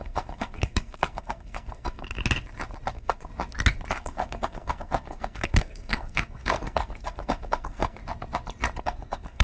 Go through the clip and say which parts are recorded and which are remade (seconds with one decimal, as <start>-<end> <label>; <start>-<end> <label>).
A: 0.0-2.2 remade; 2.2-2.9 recorded; 2.9-3.3 remade; 3.3-3.9 recorded; 3.9-8.0 remade; 8.0-8.8 recorded; 8.8-9.4 remade